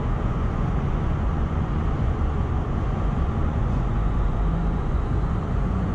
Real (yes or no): no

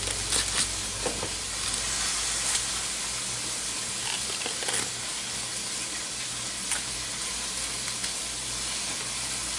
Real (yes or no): yes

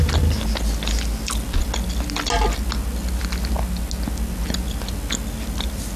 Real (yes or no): yes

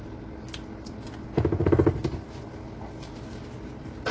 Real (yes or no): yes